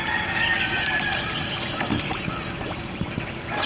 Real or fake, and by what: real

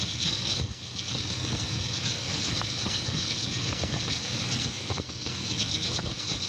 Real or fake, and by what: fake, codec, SNAC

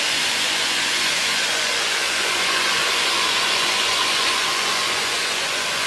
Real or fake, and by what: fake, vocoder, Vocos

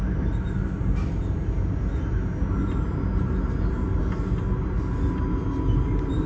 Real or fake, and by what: real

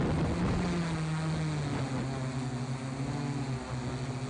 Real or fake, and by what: real